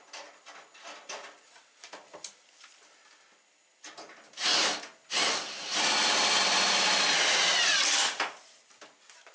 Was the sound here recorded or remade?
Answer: recorded